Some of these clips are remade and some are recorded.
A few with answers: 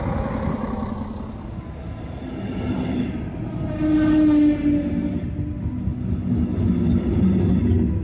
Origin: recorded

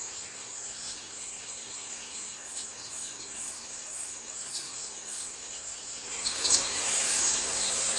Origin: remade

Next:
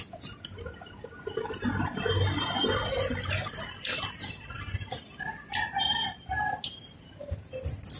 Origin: recorded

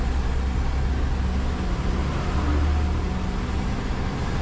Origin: recorded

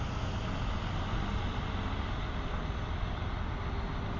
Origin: recorded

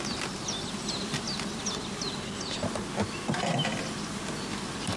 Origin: recorded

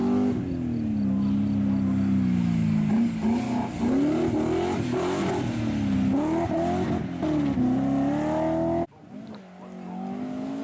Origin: recorded